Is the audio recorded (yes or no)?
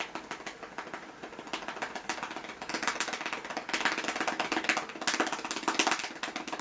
yes